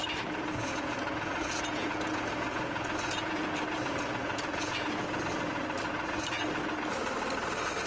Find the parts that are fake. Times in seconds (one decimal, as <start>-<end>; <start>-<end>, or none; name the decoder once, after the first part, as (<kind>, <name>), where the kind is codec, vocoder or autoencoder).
0.5-5.2 (vocoder, Vocos)